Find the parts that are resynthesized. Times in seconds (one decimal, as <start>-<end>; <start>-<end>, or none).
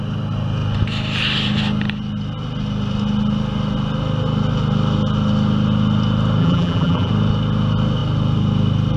6.4-7.1